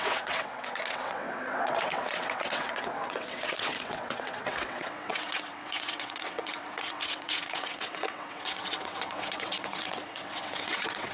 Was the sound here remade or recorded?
remade